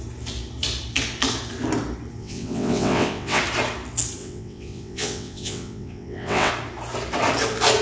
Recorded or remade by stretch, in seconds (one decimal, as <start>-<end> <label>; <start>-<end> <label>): 0.0-2.2 recorded; 2.2-3.4 remade; 3.4-4.2 recorded; 4.2-6.5 remade; 6.5-7.8 recorded